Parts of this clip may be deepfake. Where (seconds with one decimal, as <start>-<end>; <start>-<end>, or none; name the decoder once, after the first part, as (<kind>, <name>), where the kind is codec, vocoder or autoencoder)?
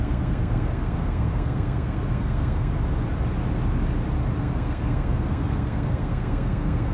0.0-2.7 (codec, SNAC); 4.4-6.9